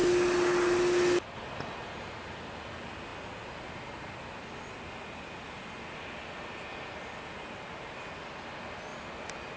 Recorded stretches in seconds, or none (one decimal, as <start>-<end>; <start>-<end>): 0.0-9.6